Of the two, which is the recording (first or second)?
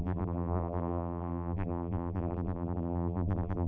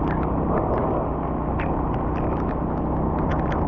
second